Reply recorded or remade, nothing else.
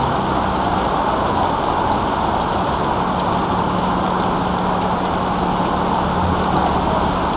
recorded